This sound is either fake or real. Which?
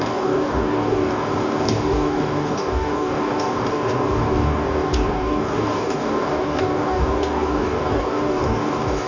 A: fake